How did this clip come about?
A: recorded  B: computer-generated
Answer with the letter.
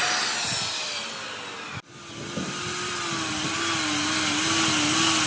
A